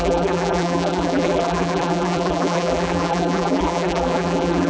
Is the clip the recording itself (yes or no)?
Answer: no